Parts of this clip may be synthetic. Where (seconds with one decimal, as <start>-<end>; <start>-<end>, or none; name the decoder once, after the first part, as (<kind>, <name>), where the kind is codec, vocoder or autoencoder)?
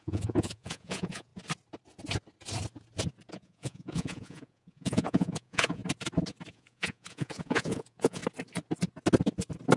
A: 0.0-1.3 (vocoder, Vocos); 3.3-5.8; 6.5-8.2